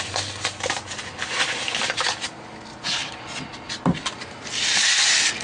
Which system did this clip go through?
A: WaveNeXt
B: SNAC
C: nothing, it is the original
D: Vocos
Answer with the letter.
C